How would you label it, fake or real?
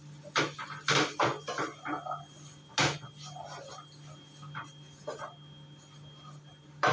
real